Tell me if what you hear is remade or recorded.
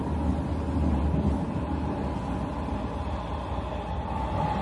recorded